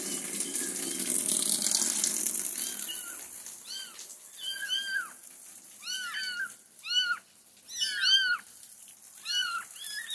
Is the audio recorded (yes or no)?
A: yes